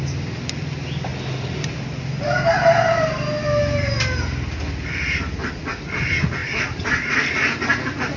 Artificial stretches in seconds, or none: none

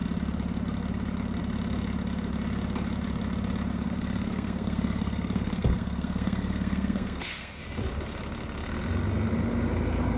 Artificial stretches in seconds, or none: 3.7-7.6 (codec, SNAC)

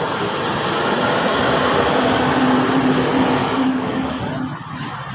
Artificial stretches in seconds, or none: 3.4-4.2 (codec, DAC)

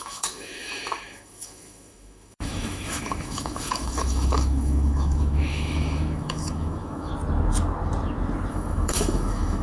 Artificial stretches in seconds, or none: 0.0-7.1 (autoencoder, DAC-VAE); 8.5-9.6

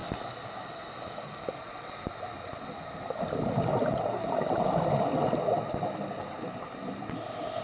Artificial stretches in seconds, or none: none

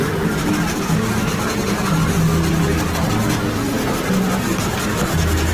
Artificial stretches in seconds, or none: none

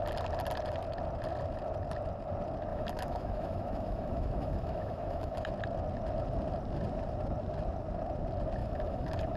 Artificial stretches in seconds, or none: 2.7-5.5 (autoencoder, DAC-VAE); 8.6-9.4